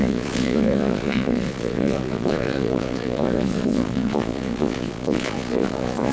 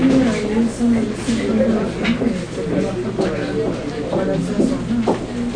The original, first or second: second